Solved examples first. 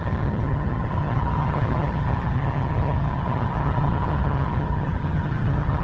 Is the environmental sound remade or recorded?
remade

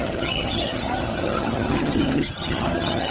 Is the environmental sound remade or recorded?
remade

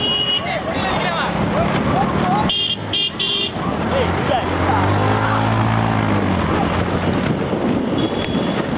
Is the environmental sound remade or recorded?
recorded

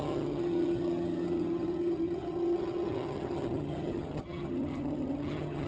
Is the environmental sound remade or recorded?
remade